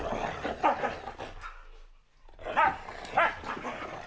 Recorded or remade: recorded